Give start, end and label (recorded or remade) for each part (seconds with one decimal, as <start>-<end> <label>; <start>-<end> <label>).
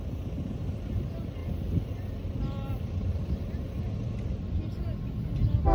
0.0-1.4 recorded; 1.4-4.8 remade; 4.8-5.7 recorded